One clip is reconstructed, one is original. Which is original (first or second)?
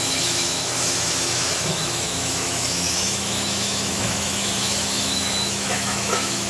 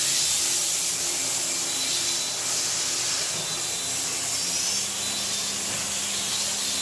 second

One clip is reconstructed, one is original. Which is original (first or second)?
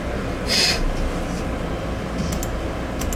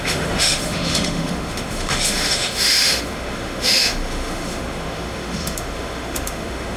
first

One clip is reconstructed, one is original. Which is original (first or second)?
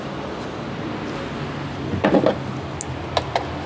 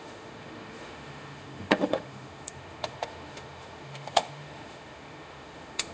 first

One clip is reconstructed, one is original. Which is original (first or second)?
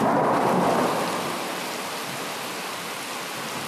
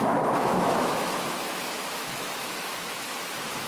first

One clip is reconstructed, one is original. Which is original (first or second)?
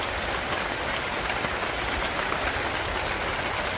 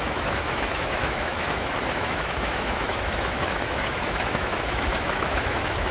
first